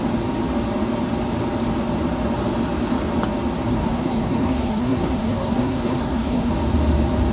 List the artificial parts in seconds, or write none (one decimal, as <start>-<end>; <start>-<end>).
3.8-6.5